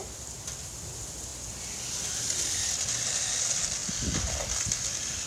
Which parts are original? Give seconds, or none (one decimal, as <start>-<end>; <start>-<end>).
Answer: 0.0-5.3